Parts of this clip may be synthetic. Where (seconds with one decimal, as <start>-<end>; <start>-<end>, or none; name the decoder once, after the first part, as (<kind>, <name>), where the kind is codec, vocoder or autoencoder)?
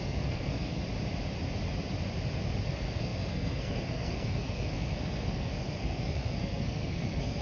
0.0-0.8 (codec, SNAC); 2.7-7.4